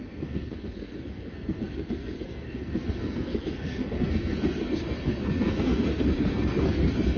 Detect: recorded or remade remade